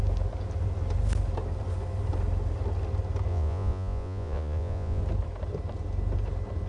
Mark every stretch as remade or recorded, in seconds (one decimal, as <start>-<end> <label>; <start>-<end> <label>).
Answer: 0.0-3.3 recorded; 3.3-5.0 remade; 5.0-6.7 recorded